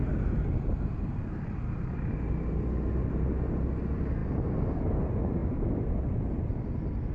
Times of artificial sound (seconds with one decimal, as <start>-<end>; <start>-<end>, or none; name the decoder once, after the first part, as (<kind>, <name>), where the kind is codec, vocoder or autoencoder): none